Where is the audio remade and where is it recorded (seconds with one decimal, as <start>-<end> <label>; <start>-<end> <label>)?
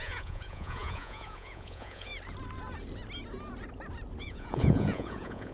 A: 0.0-2.1 remade; 2.1-4.2 recorded; 4.2-5.5 remade